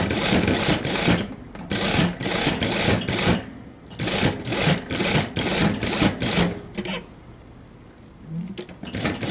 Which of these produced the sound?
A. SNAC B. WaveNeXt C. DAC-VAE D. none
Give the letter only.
D